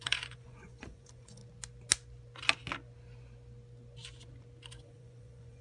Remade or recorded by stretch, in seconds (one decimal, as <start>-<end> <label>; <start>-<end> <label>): 0.0-1.4 remade; 1.4-4.8 recorded; 4.8-5.6 remade